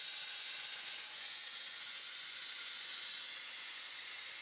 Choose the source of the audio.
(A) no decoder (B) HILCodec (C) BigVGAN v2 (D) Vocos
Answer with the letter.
D